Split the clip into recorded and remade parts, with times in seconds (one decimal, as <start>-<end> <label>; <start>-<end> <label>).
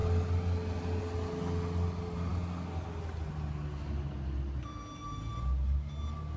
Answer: 0.0-6.4 recorded